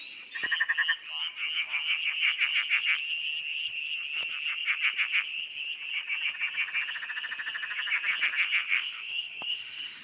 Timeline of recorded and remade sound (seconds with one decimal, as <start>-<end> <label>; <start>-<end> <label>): 0.0-8.7 recorded; 8.7-10.0 remade